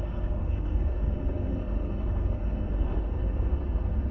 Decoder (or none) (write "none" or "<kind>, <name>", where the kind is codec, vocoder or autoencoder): codec, SNAC